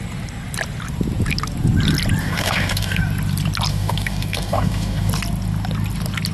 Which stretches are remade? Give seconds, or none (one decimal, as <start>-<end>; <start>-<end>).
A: 2.2-3.0; 3.7-5.1